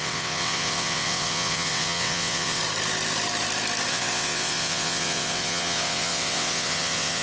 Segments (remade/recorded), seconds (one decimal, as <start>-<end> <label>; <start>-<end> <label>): 0.0-2.6 remade; 2.6-3.9 recorded; 3.9-7.2 remade

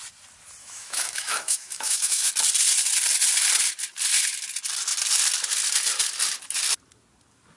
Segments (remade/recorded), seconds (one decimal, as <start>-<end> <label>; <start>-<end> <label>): 0.0-0.6 recorded; 0.6-2.3 remade; 2.3-7.6 recorded

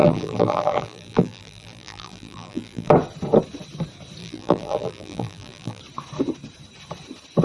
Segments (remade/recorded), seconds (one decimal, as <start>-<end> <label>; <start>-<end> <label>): 0.0-2.9 remade; 2.9-4.2 recorded; 4.2-5.8 remade; 5.8-7.4 recorded

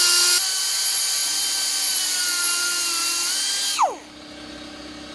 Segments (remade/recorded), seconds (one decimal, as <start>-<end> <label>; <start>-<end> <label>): 0.0-5.1 recorded